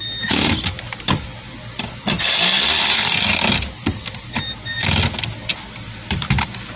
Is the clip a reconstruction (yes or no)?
no